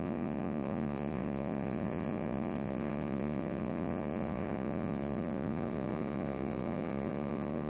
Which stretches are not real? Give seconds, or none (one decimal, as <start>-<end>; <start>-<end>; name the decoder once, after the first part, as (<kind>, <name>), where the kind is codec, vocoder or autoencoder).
0.0-7.7 (vocoder, Vocos)